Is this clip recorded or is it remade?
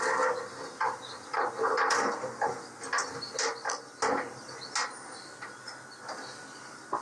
recorded